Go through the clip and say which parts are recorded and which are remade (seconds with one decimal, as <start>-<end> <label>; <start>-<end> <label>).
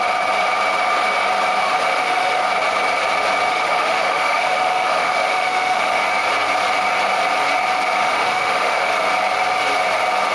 0.0-1.7 recorded; 1.7-2.4 remade; 2.4-3.5 recorded; 3.5-6.0 remade; 6.0-8.0 recorded; 8.0-8.9 remade; 8.9-10.3 recorded